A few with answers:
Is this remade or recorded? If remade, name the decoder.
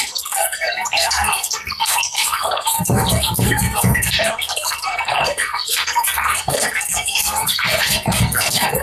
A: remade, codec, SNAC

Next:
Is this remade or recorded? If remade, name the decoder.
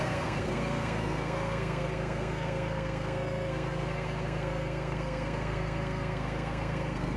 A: remade, codec, SNAC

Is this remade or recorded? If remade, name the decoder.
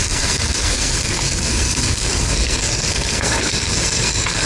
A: remade, codec, SNAC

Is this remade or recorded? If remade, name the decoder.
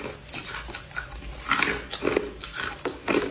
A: recorded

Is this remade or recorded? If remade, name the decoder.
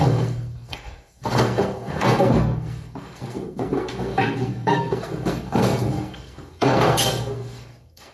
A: remade, codec, SNAC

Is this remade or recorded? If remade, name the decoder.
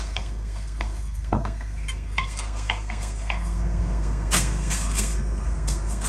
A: remade, codec, SNAC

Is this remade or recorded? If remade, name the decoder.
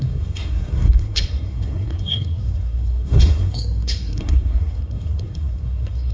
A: remade, codec, SNAC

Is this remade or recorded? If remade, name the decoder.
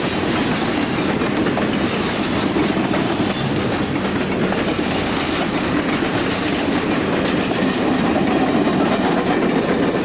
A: recorded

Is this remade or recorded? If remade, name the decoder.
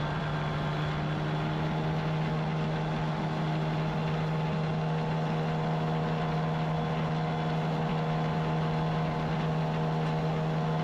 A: recorded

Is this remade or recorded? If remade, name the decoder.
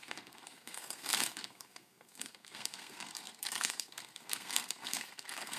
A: remade, codec, SNAC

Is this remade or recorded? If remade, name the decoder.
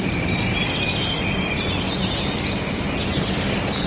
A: recorded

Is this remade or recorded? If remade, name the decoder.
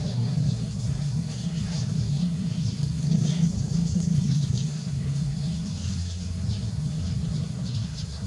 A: remade, codec, SNAC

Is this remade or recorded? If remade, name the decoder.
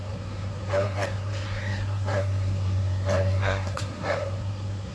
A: remade, codec, SNAC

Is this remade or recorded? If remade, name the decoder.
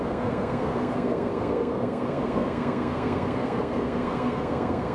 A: remade, codec, SNAC